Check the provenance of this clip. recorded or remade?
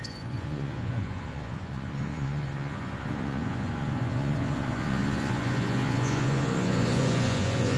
remade